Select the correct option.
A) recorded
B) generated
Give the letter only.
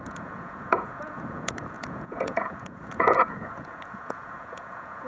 B